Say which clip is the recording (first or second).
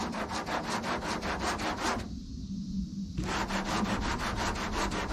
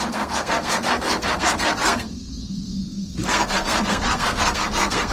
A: first